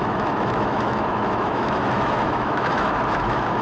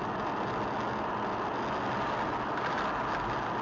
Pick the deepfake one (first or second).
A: first